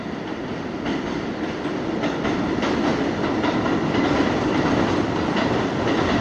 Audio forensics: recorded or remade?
remade